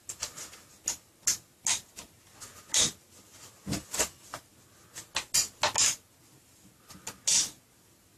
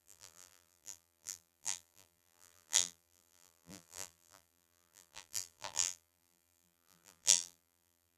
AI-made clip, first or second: second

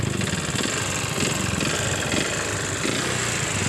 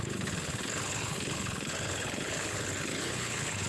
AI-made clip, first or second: second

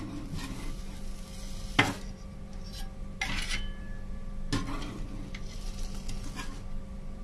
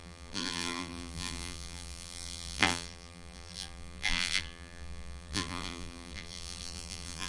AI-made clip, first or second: second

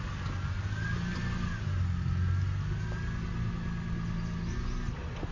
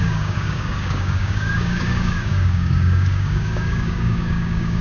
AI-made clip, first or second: second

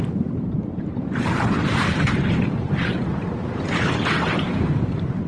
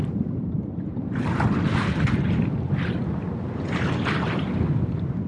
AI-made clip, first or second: first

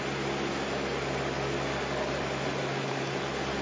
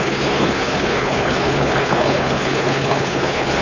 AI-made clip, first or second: second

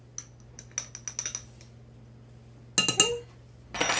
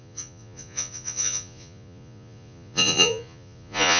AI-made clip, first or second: second